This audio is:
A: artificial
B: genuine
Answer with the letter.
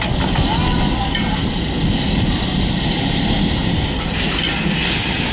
B